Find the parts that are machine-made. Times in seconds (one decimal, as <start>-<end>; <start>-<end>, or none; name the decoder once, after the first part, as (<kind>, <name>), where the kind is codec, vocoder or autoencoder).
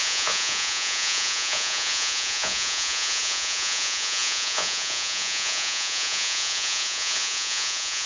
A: 0.0-8.1 (vocoder, Vocos)